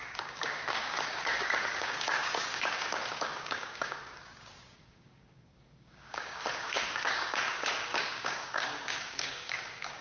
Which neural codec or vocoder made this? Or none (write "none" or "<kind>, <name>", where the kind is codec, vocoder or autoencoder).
codec, DAC